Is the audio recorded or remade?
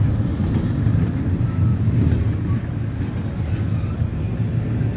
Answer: recorded